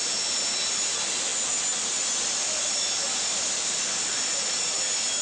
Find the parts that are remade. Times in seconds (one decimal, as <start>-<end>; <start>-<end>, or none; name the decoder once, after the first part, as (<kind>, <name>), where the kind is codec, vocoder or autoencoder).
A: none